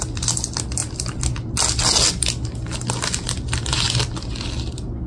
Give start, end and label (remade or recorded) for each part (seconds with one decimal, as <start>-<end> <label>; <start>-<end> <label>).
0.0-5.1 recorded